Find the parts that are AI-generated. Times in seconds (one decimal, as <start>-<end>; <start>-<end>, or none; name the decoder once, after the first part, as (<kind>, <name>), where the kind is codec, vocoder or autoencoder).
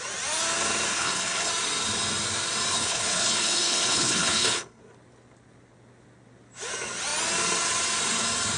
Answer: 0.9-1.5 (codec, HILCodec); 2.7-4.8